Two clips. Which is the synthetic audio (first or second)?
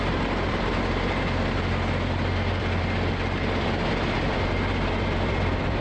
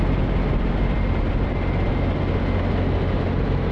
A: first